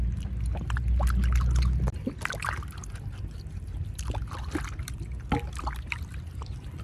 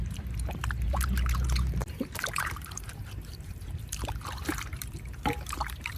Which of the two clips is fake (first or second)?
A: second